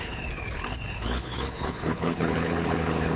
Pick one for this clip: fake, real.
fake